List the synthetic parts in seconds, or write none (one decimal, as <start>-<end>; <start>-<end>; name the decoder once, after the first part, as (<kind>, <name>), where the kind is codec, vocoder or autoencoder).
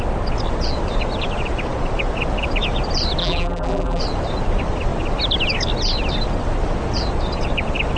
3.2-4.0 (vocoder, BigVGAN v2)